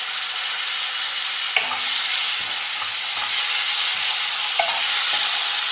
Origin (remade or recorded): recorded